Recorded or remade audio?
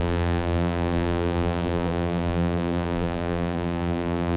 remade